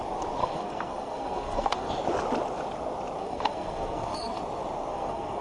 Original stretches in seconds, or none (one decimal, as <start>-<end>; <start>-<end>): 0.0-0.4; 1.9-3.2; 4.4-4.9